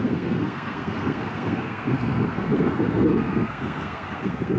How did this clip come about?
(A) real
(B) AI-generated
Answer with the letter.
B